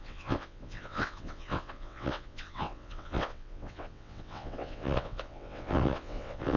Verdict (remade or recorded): remade